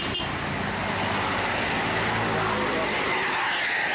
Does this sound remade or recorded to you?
recorded